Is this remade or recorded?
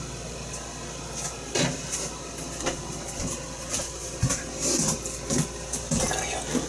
recorded